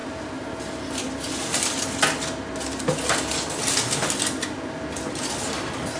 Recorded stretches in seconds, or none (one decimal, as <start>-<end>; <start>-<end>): 0.0-6.0